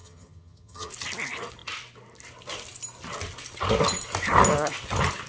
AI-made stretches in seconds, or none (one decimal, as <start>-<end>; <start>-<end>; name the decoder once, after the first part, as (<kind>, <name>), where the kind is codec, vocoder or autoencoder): 0.0-0.9 (vocoder, HiFi-GAN)